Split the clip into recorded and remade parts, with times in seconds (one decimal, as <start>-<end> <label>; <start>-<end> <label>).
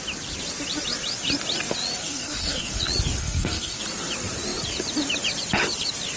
0.0-2.0 recorded; 2.0-2.8 remade; 2.8-3.2 recorded; 3.2-3.8 remade; 3.8-6.2 recorded